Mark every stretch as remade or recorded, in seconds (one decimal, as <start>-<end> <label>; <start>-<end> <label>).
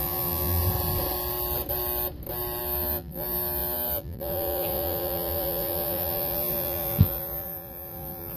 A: 0.0-0.6 remade; 0.6-2.6 recorded; 2.6-8.4 remade